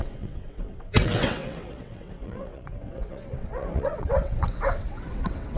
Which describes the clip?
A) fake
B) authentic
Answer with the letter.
A